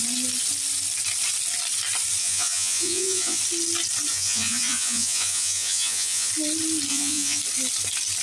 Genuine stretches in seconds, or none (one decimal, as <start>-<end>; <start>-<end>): 0.0-2.2; 3.4-4.1; 6.3-6.9; 7.4-8.2